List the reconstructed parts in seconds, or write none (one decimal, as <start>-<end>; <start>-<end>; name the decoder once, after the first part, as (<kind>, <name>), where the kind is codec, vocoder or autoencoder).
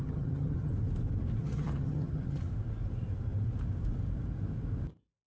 0.0-0.7 (vocoder, HiFi-GAN); 1.4-2.5